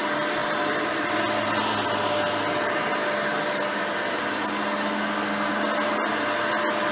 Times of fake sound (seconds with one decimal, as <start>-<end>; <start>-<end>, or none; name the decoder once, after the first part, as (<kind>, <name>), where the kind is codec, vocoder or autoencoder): none